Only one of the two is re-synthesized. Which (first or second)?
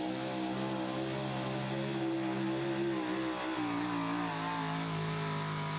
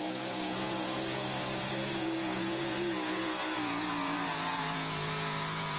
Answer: second